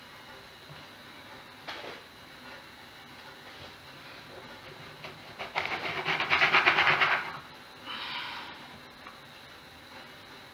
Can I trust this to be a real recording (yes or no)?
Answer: yes